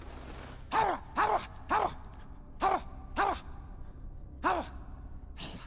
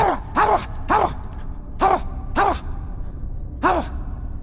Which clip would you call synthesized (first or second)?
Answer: second